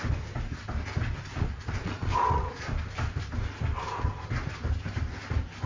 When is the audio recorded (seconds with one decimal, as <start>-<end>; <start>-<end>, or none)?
0.0-1.3; 2.7-5.7